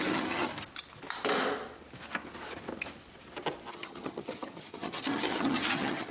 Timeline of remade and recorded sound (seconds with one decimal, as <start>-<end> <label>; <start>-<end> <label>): 0.0-0.5 remade; 0.5-3.7 recorded; 3.7-6.1 remade

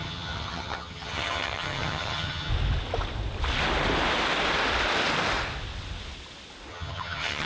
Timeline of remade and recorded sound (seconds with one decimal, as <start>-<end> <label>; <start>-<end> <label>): 0.0-2.5 remade; 2.5-6.7 recorded; 6.7-7.5 remade

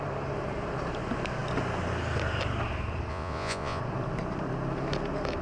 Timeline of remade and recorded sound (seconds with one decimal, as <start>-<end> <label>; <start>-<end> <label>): 0.0-3.1 recorded; 3.1-3.8 remade; 3.8-5.4 recorded

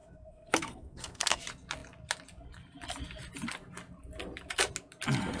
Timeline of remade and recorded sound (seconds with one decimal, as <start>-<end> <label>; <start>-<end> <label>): 0.0-1.4 remade; 1.4-5.4 recorded

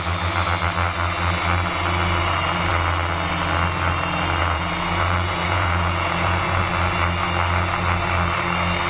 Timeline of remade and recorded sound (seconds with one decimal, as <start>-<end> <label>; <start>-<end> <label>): 0.0-4.4 recorded; 4.4-6.6 remade; 6.6-8.9 recorded

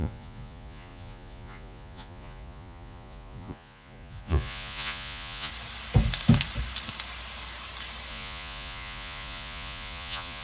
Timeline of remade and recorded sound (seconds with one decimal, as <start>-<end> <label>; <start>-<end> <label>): 0.0-5.5 remade; 5.5-8.1 recorded; 8.1-10.4 remade

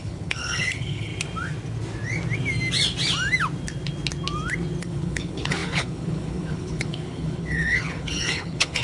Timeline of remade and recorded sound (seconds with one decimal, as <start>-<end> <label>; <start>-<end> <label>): 0.0-1.1 remade; 1.1-4.8 recorded; 4.8-8.8 remade

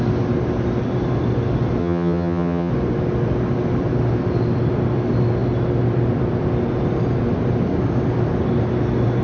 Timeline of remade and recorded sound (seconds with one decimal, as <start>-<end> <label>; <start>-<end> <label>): 0.0-1.8 recorded; 1.8-2.7 remade; 2.7-9.2 recorded